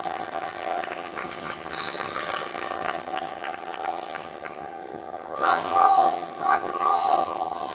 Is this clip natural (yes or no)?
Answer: no